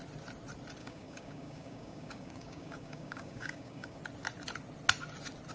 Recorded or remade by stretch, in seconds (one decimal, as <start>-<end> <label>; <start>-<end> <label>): 0.0-0.8 recorded; 0.8-4.0 remade; 4.0-5.5 recorded